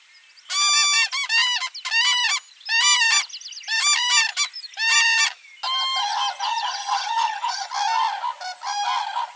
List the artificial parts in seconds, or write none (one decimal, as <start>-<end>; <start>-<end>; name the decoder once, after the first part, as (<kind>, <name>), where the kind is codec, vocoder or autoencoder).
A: 6.4-7.7 (vocoder, HiFi-GAN)